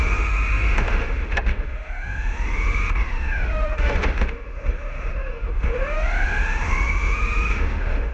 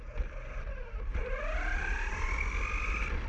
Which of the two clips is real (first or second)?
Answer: second